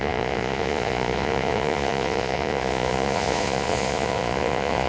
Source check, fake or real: fake